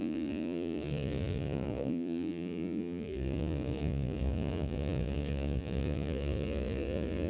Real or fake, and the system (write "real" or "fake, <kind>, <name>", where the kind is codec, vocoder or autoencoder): fake, vocoder, Vocos